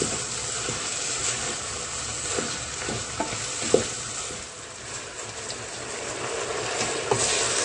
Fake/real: real